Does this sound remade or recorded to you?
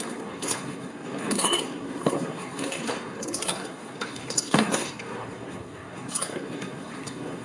remade